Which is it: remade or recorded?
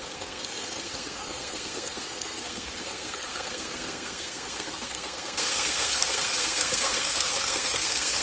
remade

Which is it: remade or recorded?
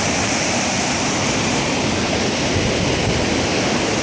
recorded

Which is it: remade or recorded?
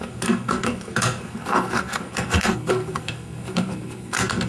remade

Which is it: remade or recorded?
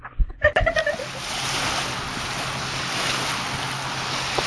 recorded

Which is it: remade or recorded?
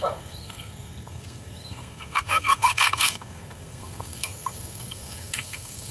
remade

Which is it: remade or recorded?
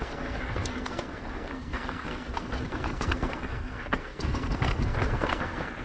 remade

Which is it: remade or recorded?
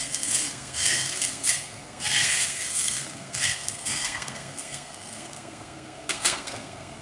remade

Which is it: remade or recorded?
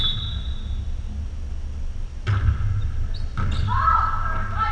recorded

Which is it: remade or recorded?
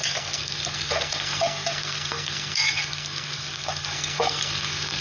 remade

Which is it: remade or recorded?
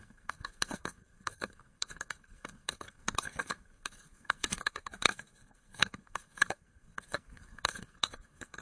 remade